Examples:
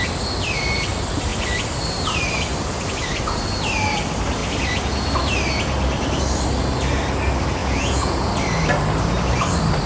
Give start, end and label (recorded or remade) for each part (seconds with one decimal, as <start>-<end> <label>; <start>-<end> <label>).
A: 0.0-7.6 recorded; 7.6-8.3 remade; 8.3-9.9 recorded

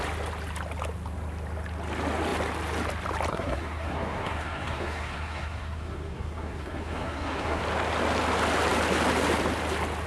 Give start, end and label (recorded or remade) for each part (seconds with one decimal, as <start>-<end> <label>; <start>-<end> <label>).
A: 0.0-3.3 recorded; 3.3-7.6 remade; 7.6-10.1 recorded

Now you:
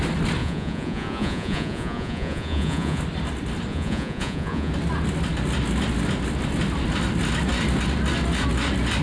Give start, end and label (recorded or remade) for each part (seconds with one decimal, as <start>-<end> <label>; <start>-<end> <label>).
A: 0.0-0.4 recorded; 0.4-3.0 remade; 3.0-3.7 recorded; 3.7-4.7 remade; 4.7-9.0 recorded

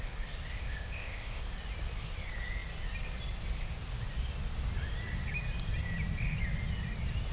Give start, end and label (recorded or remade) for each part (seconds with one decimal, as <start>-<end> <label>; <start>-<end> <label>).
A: 0.0-0.5 recorded; 0.5-1.4 remade; 1.4-7.3 recorded

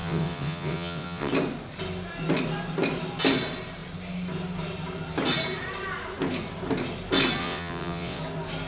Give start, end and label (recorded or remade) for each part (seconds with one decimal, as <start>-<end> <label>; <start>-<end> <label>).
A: 0.0-1.3 remade; 1.3-7.4 recorded; 7.4-8.2 remade; 8.2-8.7 recorded

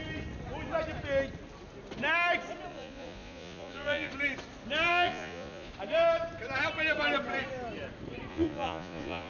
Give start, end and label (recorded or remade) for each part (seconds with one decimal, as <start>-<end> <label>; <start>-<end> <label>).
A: 0.0-2.7 recorded; 2.7-4.1 remade; 4.1-4.9 recorded; 4.9-5.7 remade; 5.7-8.3 recorded; 8.3-9.3 remade

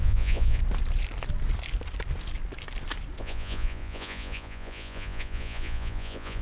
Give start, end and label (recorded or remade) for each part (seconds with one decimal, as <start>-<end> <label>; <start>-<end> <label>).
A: 0.0-0.6 remade; 0.6-3.2 recorded; 3.2-6.4 remade